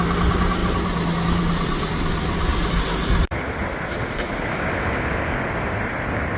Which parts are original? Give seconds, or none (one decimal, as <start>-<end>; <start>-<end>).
0.0-6.4